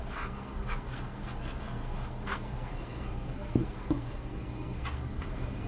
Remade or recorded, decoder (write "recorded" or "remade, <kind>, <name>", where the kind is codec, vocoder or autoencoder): remade, codec, SNAC